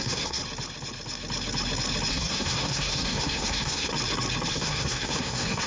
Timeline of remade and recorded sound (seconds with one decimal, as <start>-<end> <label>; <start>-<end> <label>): 0.0-0.4 remade; 0.4-2.1 recorded; 2.1-3.9 remade; 3.9-4.5 recorded; 4.5-5.7 remade